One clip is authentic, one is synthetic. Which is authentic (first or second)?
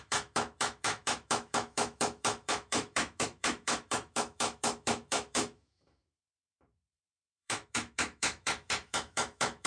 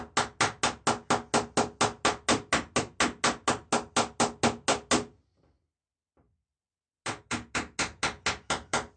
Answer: second